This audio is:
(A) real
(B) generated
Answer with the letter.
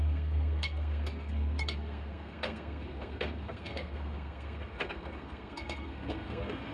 B